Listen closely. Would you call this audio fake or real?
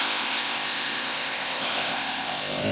fake